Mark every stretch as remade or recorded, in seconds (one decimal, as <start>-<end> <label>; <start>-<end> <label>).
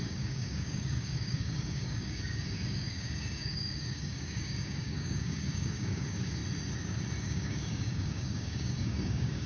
0.0-6.4 remade; 6.4-7.2 recorded; 7.2-9.5 remade